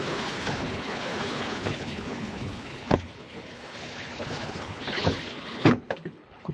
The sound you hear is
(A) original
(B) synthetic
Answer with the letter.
B